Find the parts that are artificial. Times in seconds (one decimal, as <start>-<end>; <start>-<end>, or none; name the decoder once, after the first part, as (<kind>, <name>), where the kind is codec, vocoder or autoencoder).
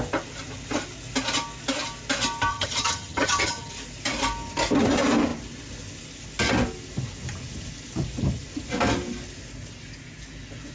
2.5-3.7 (vocoder, HiFi-GAN)